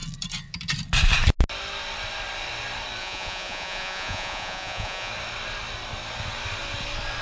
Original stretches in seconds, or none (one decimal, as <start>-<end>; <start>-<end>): 0.0-3.0; 5.1-7.2